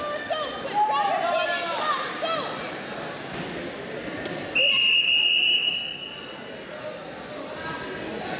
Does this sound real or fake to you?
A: real